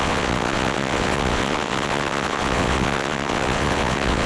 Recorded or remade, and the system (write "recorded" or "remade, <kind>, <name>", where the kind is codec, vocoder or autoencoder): remade, vocoder, WaveNeXt